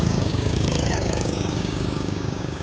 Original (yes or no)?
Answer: no